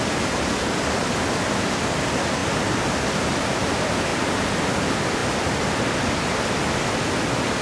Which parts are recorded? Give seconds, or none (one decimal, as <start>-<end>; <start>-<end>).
0.0-2.4; 3.4-4.1; 4.7-7.6